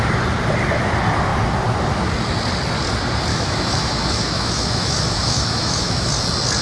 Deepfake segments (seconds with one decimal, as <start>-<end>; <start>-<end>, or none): 3.3-6.1